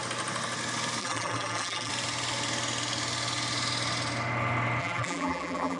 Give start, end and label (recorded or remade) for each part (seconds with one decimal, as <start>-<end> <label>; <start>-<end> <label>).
0.0-1.0 recorded; 1.0-1.9 remade; 1.9-4.8 recorded; 4.8-5.8 remade